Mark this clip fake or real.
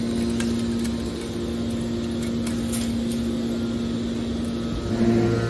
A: real